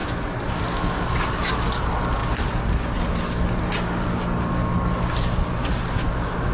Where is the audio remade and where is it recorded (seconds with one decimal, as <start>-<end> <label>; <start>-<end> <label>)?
0.0-6.5 recorded